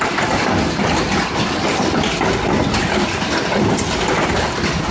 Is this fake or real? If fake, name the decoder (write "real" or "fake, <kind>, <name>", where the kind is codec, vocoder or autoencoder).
real